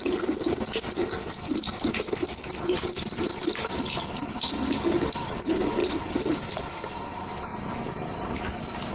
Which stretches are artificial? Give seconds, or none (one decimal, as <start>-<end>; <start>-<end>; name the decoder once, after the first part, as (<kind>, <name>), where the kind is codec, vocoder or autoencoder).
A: none